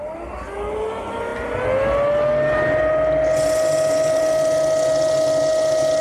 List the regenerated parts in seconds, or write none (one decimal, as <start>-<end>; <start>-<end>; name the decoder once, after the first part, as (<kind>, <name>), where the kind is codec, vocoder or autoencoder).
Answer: none

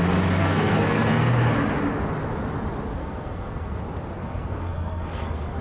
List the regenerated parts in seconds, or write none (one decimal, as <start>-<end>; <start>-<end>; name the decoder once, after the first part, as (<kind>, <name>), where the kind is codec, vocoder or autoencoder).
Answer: 0.4-1.3 (codec, SNAC); 3.0-3.8; 4.2-5.6

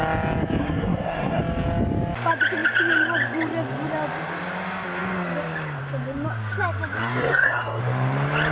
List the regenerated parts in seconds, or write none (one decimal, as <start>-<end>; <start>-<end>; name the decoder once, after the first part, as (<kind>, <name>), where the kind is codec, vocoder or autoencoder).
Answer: 0.6-1.4 (codec, SNAC); 7.0-7.8

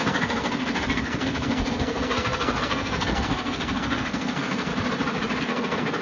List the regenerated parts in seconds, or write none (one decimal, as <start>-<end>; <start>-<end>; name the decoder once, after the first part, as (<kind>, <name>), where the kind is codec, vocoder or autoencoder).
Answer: 0.0-4.7 (codec, SNAC); 5.4-6.0

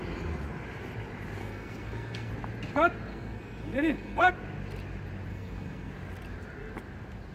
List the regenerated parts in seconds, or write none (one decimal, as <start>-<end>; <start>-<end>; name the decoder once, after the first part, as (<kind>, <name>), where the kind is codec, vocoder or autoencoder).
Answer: 1.4-2.3 (codec, SNAC); 3.1-4.3; 5.3-5.9

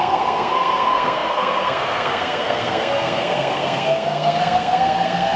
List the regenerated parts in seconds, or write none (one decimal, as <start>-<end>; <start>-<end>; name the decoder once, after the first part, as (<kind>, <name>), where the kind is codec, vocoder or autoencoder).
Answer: 0.0-5.4 (codec, SNAC)

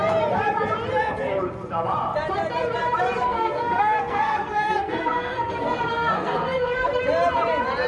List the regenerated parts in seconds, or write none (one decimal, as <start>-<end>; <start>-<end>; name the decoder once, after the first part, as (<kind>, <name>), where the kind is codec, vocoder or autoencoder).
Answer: 3.2-7.0 (codec, SNAC)

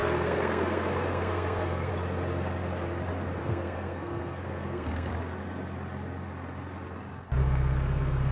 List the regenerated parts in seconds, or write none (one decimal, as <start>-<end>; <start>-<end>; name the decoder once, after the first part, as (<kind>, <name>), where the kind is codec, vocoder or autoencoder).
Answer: 0.0-1.9 (codec, SNAC); 3.4-5.1; 7.4-8.3